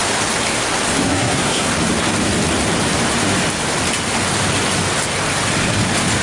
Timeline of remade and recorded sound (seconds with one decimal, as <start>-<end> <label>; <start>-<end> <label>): 0.0-1.0 recorded; 1.0-1.7 remade; 1.7-6.2 recorded